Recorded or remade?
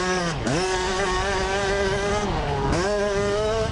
remade